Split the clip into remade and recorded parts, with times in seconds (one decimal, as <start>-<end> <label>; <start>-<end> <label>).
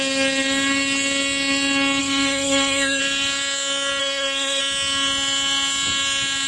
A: 0.0-2.0 recorded; 2.0-3.0 remade; 3.0-4.0 recorded; 4.0-4.6 remade; 4.6-6.5 recorded